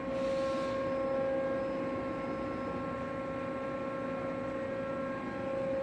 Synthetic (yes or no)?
no